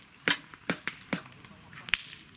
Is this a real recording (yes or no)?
yes